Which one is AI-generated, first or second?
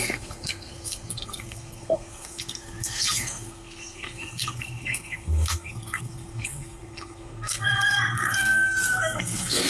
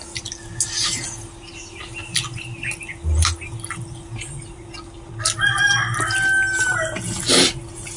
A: first